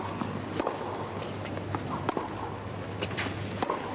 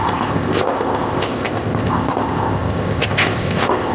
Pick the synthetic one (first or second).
second